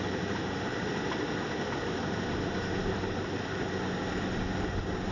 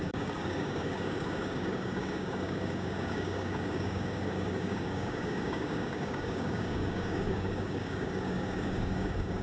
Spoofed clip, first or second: second